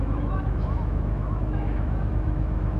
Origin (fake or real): fake